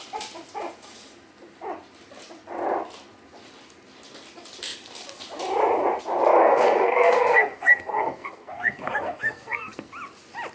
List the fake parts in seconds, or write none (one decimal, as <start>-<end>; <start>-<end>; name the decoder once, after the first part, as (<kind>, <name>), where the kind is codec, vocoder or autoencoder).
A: 6.4-9.9 (codec, SNAC)